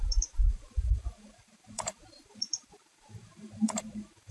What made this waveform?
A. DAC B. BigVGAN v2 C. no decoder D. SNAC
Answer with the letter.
B